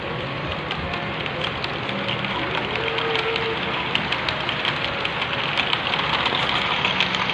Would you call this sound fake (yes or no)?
no